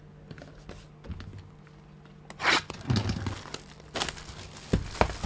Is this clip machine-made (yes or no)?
no